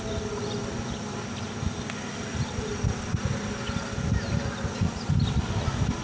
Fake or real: real